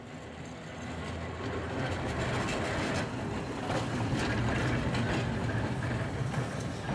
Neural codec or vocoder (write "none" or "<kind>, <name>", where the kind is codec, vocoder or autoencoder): none